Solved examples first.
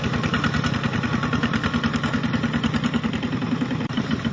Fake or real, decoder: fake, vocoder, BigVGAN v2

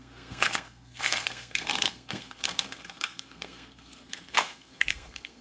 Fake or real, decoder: fake, codec, SNAC